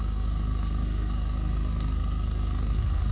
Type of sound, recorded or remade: remade